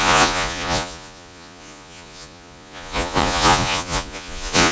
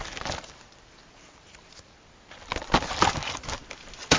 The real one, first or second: second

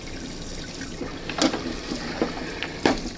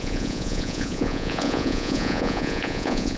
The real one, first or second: first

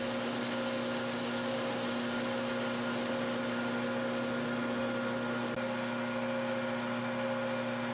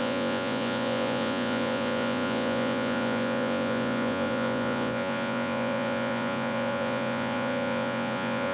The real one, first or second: first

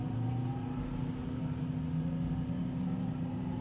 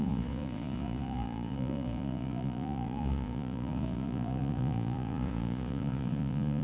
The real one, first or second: first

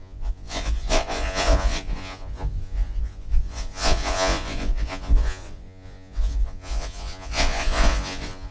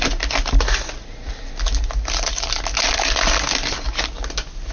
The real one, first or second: second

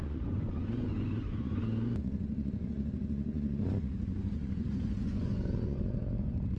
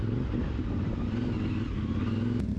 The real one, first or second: second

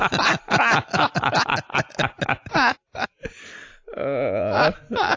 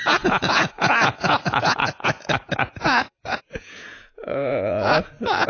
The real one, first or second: first